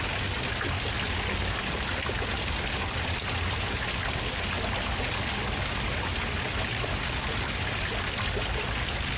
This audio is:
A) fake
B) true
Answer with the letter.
B